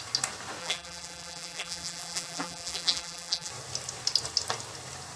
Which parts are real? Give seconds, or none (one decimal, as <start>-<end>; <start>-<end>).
0.0-0.6; 3.5-5.2